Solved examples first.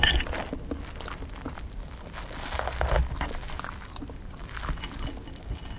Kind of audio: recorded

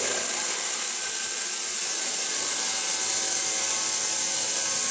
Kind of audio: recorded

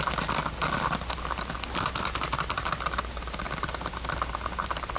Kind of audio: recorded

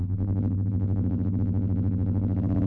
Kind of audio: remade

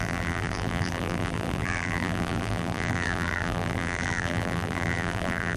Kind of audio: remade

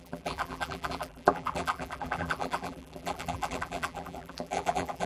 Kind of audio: remade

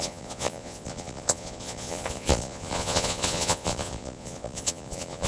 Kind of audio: remade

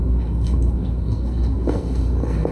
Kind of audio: remade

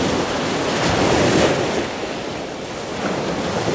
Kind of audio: recorded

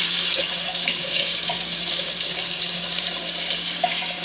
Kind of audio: remade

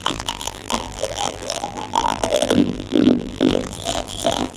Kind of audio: remade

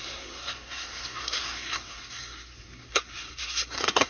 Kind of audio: remade